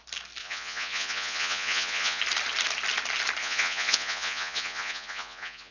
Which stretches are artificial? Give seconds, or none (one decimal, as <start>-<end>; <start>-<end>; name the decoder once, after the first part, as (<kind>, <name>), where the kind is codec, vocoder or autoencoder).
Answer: 0.4-2.2 (vocoder, Vocos); 3.4-5.7